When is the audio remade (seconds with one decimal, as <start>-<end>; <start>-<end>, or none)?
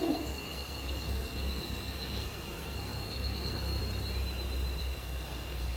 0.0-3.8; 4.8-5.8